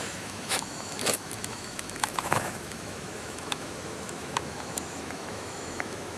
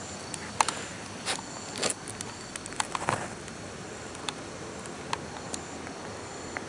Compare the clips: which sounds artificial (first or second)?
first